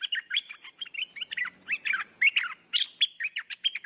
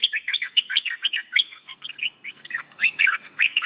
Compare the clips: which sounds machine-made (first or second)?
second